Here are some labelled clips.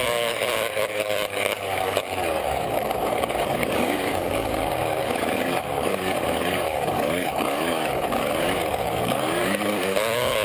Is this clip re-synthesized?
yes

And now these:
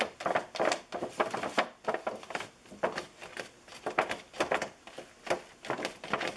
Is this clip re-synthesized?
no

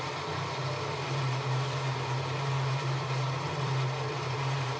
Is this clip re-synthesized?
yes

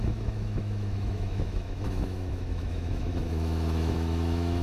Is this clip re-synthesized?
yes